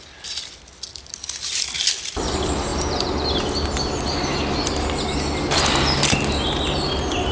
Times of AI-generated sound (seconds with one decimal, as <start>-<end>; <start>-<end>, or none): none